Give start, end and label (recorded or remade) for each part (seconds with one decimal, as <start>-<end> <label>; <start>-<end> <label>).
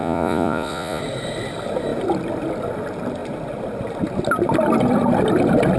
0.0-1.0 remade; 1.0-5.8 recorded